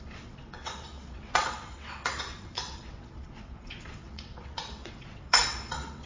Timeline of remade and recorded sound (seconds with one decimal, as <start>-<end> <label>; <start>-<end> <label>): 0.0-6.1 remade